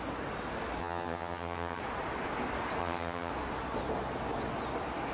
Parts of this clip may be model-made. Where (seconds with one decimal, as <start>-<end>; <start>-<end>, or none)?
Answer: 0.8-1.8; 2.8-3.3